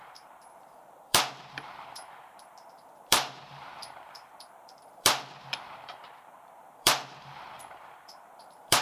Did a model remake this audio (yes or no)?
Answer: yes